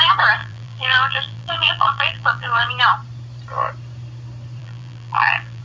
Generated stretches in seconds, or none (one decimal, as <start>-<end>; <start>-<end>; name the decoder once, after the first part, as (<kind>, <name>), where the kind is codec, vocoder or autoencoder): 0.4-2.7 (vocoder, BigVGAN v2); 4.6-5.6